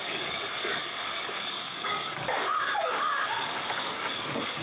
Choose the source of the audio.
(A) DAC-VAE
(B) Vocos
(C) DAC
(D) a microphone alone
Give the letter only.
C